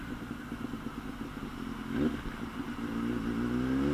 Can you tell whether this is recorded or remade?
recorded